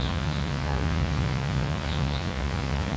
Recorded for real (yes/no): no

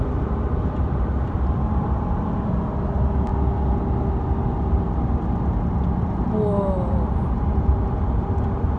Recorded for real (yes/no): yes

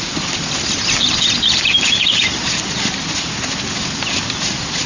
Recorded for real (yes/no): yes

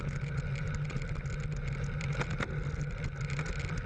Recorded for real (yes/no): yes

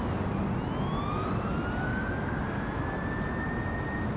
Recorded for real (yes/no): yes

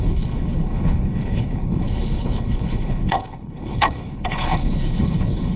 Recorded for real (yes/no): no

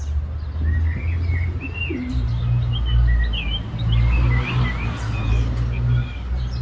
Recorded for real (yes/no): yes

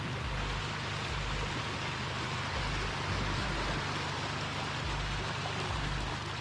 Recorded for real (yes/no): yes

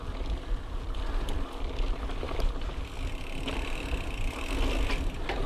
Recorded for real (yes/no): yes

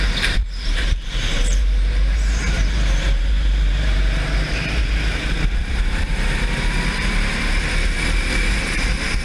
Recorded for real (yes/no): no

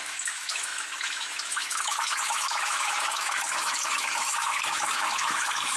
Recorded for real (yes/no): no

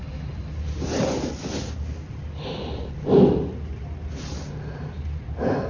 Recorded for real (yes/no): yes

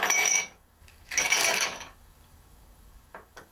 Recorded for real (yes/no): no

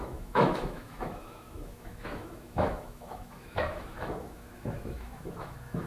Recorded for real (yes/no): no